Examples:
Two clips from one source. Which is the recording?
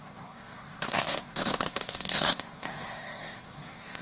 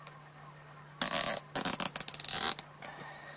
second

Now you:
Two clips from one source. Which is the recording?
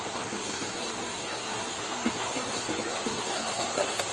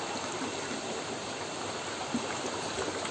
second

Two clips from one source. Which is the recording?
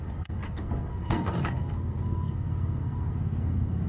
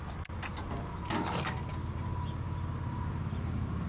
second